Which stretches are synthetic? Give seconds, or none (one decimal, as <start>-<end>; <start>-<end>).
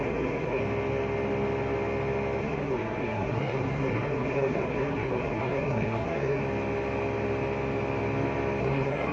0.0-0.6; 2.4-6.4; 8.6-9.1